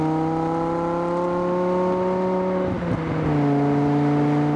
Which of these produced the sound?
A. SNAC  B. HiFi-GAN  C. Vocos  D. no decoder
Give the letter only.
D